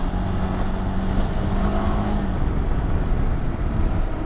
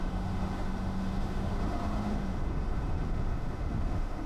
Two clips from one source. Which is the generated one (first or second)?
second